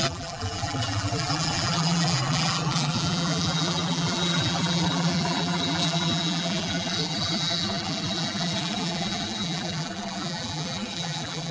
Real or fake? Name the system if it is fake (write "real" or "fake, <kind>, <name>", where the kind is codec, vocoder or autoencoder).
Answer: fake, vocoder, BigVGAN v2